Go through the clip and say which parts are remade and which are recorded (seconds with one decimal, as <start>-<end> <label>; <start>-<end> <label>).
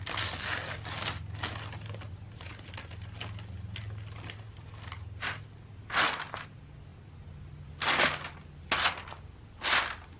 0.0-10.2 recorded